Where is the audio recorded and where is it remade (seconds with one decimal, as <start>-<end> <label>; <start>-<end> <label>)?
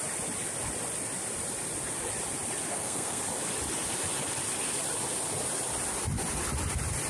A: 0.0-2.7 recorded; 2.7-3.2 remade; 3.2-7.1 recorded